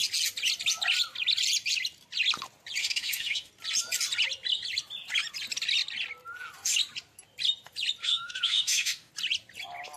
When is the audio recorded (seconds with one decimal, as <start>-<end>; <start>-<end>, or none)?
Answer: 0.0-2.8; 3.5-8.0; 9.1-10.0